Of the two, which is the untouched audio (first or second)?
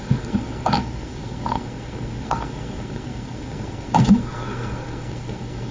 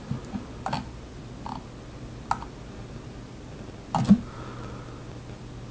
second